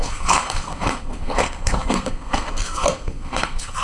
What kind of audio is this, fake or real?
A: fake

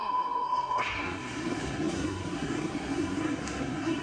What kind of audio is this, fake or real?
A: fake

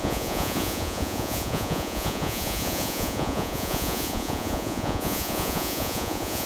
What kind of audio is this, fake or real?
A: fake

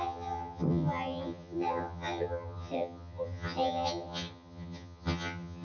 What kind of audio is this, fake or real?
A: fake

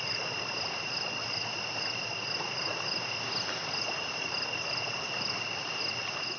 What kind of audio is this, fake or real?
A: real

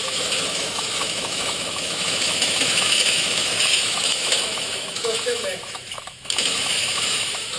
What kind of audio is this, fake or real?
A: fake